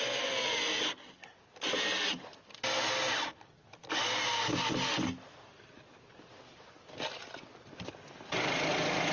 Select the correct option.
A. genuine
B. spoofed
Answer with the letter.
A